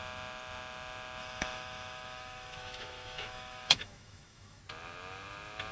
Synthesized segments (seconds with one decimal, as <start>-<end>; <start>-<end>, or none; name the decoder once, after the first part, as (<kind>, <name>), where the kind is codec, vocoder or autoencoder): 1.2-4.6 (autoencoder, DAC-VAE)